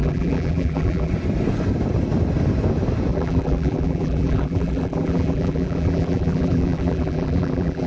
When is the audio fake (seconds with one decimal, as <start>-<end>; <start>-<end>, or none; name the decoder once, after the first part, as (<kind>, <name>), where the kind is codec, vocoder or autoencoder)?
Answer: 0.0-1.1 (vocoder, BigVGAN v2); 3.1-7.9